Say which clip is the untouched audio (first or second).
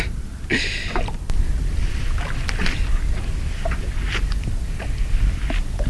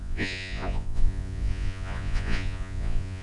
first